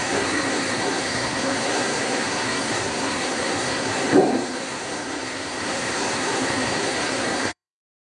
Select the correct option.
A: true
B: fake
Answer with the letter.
B